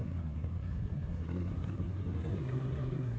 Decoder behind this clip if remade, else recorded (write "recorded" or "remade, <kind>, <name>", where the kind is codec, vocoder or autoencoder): remade, codec, SNAC